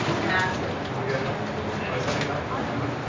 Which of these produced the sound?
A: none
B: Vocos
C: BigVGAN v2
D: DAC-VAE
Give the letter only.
A